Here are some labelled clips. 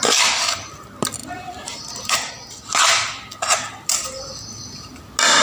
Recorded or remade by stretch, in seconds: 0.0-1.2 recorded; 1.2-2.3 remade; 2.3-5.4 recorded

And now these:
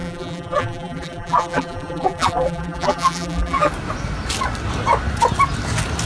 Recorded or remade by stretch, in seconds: 0.0-3.7 remade; 3.7-6.1 recorded

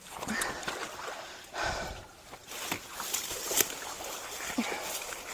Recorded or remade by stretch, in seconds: 0.0-5.3 recorded

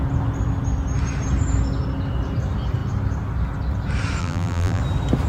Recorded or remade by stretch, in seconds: 0.0-4.2 recorded; 4.2-4.8 remade; 4.8-5.3 recorded

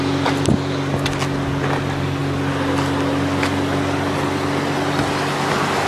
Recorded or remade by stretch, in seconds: 0.0-5.9 recorded

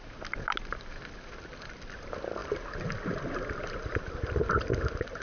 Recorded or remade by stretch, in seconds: 0.0-5.2 recorded

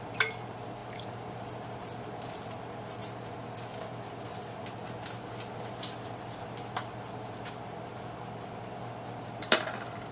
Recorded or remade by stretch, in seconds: 0.0-0.8 remade; 0.8-1.4 recorded; 1.4-3.0 remade; 3.0-5.8 recorded; 5.8-10.1 remade